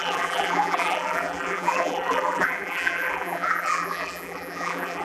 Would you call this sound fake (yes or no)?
yes